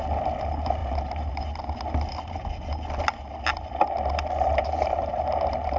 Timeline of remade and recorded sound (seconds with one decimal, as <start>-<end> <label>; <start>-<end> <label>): 0.0-0.8 recorded; 0.8-1.3 remade; 1.3-4.6 recorded; 4.6-5.1 remade; 5.1-5.8 recorded